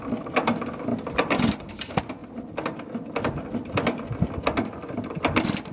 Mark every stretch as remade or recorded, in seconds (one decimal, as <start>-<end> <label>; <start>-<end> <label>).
0.0-0.9 remade; 0.9-1.6 recorded; 1.6-5.7 remade